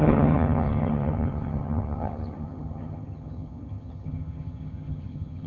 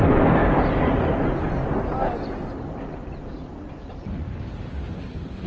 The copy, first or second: first